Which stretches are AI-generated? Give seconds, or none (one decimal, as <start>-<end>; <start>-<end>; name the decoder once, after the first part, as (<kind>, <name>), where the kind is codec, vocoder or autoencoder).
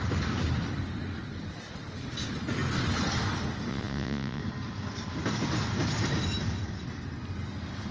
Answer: 3.7-4.4 (vocoder, Vocos)